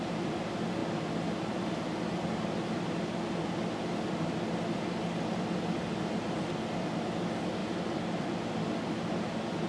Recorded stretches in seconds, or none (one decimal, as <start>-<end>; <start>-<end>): 0.0-9.7